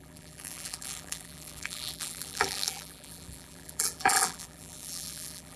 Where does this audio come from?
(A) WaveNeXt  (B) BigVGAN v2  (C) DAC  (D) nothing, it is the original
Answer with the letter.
B